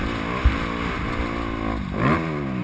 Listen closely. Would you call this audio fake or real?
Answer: real